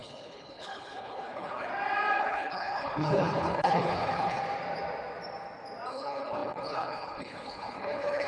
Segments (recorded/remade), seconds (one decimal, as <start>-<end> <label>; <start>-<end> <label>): 0.0-1.7 remade; 1.7-2.2 recorded; 2.2-4.4 remade; 4.4-5.9 recorded; 5.9-8.3 remade